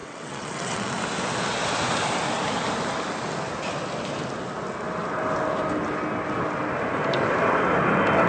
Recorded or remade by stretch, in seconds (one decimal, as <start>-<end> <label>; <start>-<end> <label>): 0.0-0.9 remade; 0.9-8.3 recorded